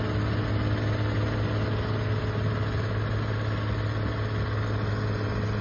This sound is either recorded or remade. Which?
recorded